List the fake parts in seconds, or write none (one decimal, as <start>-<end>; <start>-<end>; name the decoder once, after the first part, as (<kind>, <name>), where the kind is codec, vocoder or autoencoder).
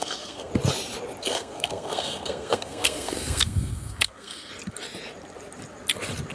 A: 0.0-0.5 (codec, SNAC); 1.2-4.5